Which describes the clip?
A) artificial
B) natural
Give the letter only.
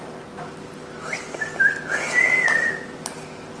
B